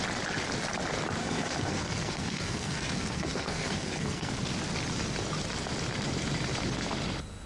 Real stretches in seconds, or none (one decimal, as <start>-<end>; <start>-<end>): 0.0-1.2; 4.3-7.5